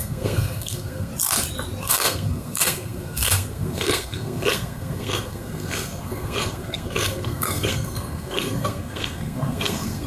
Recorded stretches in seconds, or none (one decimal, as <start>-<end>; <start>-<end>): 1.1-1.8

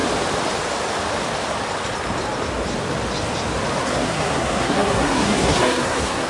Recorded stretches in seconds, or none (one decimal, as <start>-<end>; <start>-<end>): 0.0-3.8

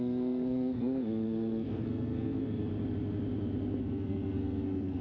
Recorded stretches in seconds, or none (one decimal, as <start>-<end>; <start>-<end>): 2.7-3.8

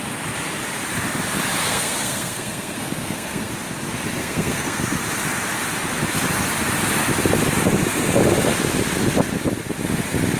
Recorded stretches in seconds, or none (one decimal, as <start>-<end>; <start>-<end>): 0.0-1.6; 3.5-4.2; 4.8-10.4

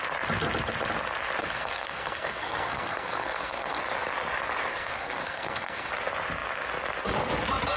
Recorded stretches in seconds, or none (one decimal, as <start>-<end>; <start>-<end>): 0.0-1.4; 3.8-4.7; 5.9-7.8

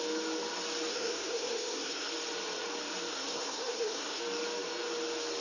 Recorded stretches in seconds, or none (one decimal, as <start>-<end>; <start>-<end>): 0.0-0.9; 2.1-3.1; 4.2-5.4

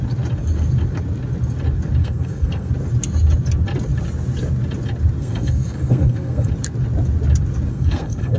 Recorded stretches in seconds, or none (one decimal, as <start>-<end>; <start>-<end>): 0.0-2.0; 2.7-5.2; 6.5-7.7

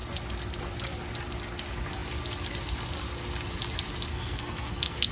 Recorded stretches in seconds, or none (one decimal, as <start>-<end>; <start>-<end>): 0.0-4.1